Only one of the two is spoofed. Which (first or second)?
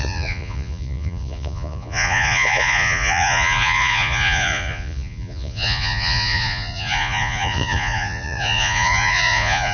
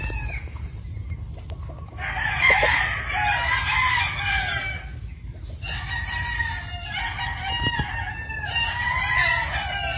first